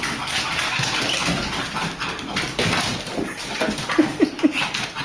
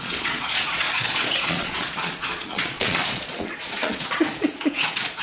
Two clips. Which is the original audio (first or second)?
first